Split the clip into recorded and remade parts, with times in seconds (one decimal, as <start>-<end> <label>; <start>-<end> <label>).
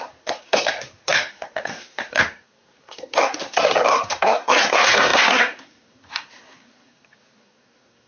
0.0-8.1 remade